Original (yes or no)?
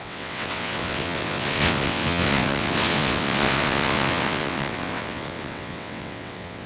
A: no